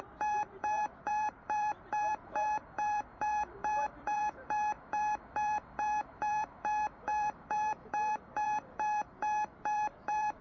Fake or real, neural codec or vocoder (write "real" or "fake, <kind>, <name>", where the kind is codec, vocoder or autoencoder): fake, vocoder, BigVGAN v2